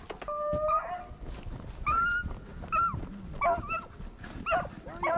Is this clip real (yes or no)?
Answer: yes